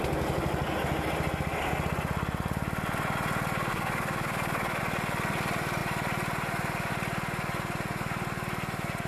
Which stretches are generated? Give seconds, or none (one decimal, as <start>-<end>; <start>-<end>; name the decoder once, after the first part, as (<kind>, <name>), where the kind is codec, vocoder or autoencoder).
3.7-4.8 (codec, DAC)

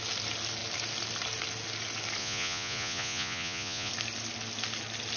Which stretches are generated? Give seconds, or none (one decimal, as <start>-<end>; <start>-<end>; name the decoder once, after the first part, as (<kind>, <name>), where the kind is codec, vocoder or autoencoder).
2.2-3.9 (vocoder, Vocos)

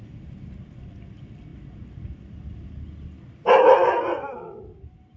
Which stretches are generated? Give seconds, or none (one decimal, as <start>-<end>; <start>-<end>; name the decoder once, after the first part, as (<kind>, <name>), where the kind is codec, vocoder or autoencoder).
0.0-1.5 (vocoder, BigVGAN v2); 4.6-5.2

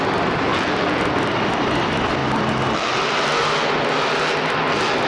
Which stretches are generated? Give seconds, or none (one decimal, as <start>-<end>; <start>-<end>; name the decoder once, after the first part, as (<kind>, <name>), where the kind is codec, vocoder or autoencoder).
0.5-1.0 (vocoder, Vocos)